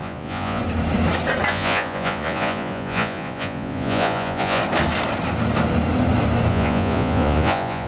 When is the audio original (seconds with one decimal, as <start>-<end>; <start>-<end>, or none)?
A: 0.6-1.5; 4.6-6.5